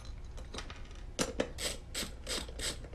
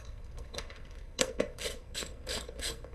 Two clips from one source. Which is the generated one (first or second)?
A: second